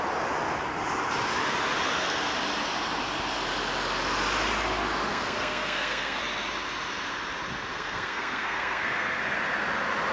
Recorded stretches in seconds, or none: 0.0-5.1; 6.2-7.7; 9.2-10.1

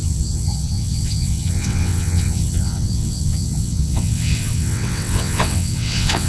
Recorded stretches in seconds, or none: none

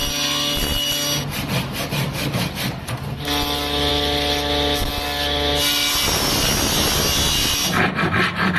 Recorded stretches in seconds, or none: 0.0-8.6

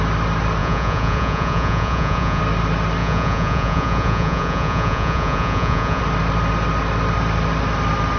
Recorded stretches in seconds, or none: 0.0-0.6; 2.4-3.0; 6.0-8.2

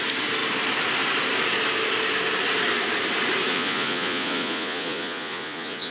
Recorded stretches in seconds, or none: 0.0-3.5

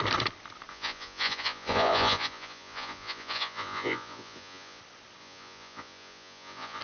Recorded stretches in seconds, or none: 0.0-0.7; 4.8-5.2